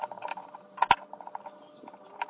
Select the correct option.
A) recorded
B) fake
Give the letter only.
A